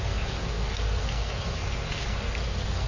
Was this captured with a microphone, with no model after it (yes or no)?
no